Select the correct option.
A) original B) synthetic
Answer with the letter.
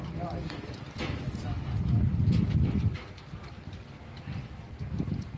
A